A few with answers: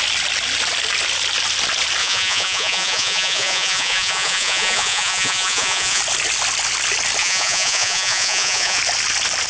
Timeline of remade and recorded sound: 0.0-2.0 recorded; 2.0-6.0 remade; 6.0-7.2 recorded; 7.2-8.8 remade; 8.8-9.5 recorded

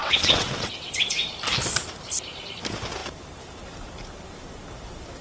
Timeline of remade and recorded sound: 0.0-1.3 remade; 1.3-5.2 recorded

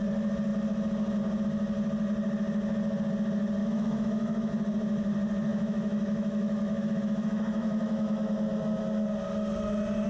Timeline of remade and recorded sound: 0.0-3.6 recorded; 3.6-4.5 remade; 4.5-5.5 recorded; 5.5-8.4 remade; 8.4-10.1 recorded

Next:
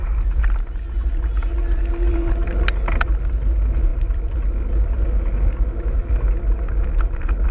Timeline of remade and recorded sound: 0.0-7.5 recorded

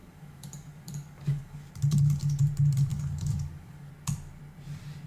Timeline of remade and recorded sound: 0.0-1.7 remade; 1.7-2.9 recorded; 2.9-3.9 remade; 3.9-5.1 recorded

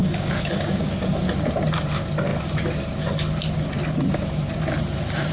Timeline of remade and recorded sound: 0.0-0.9 remade; 0.9-5.3 recorded

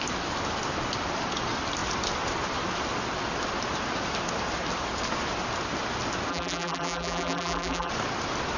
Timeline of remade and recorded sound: 0.0-6.3 recorded; 6.3-7.9 remade; 7.9-8.6 recorded

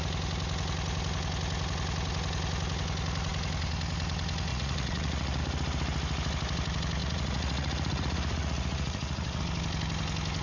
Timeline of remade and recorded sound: 0.0-4.5 recorded; 4.5-5.4 remade; 5.4-7.0 recorded; 7.0-9.4 remade; 9.4-10.4 recorded